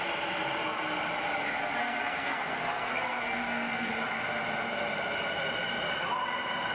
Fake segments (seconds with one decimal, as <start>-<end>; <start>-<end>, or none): 1.8-3.9